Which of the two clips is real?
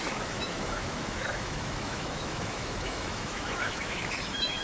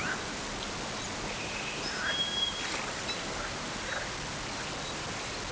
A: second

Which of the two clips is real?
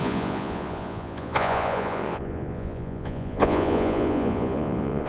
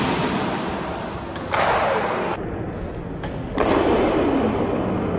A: second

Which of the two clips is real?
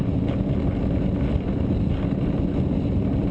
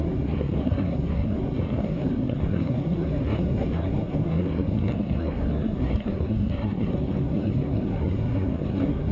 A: first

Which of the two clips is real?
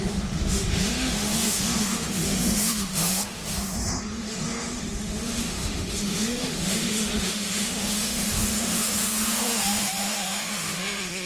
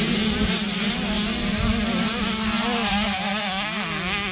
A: second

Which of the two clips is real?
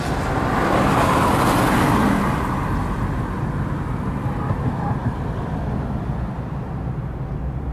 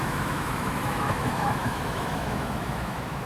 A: first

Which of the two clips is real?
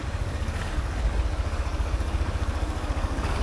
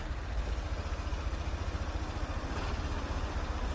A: second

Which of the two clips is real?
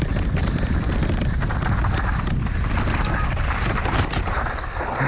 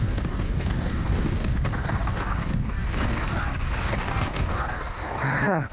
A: first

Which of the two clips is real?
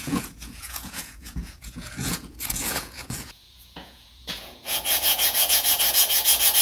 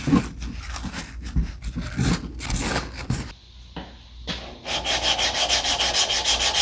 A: second